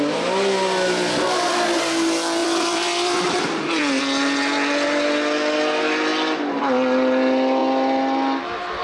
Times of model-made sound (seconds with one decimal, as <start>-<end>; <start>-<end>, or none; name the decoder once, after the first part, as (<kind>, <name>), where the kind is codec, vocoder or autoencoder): 2.4-4.0 (vocoder, BigVGAN v2)